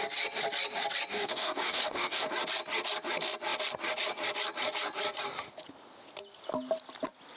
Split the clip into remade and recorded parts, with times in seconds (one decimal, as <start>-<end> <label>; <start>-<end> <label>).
0.0-1.1 recorded; 1.1-2.3 remade; 2.3-7.4 recorded